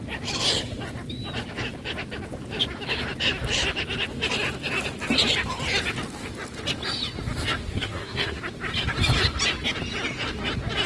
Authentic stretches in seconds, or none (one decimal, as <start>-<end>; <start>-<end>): 0.0-7.6; 8.4-10.9